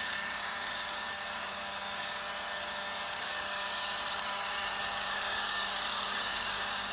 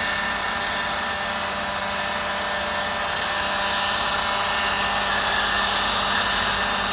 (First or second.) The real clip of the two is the second